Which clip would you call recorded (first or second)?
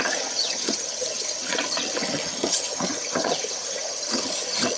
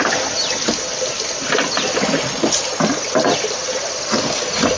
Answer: second